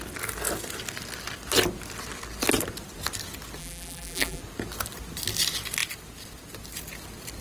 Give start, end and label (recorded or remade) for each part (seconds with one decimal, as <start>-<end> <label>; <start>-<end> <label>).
0.0-3.6 recorded; 3.6-4.4 remade; 4.4-7.4 recorded